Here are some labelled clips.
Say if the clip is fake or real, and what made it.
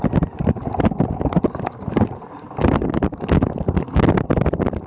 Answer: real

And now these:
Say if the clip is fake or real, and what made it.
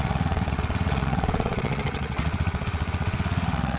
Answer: fake, vocoder, WaveNeXt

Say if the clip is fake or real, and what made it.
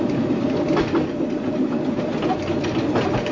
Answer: real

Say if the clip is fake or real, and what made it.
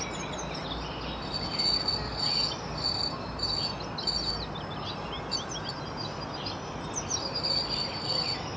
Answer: real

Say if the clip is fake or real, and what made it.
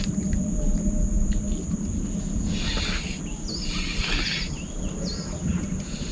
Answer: real